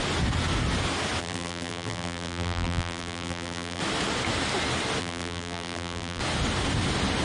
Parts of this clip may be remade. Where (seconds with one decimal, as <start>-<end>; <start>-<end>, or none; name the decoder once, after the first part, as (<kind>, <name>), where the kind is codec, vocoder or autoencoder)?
1.2-3.8 (vocoder, BigVGAN v2); 5.0-6.2